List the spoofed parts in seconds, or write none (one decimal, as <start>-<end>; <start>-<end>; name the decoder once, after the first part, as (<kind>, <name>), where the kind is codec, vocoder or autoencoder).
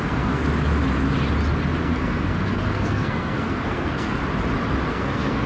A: 0.0-0.4 (codec, SNAC); 1.8-4.2; 4.9-5.5